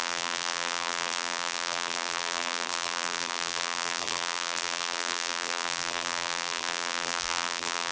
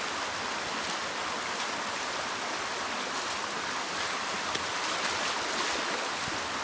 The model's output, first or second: first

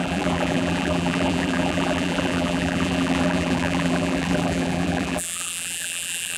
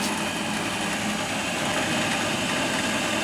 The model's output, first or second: first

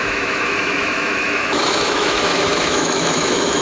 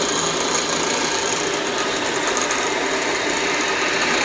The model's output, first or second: first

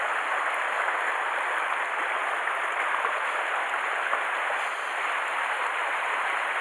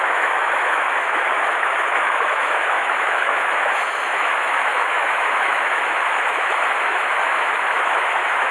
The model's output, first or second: second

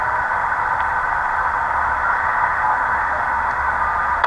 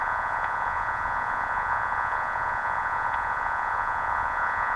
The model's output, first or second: second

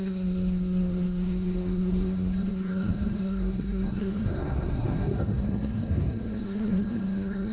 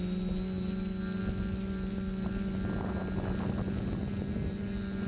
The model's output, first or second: first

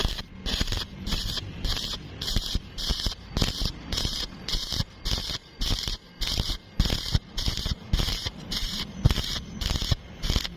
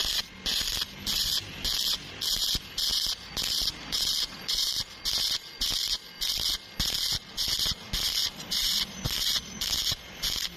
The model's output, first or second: first